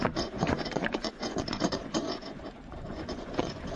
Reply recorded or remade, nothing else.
remade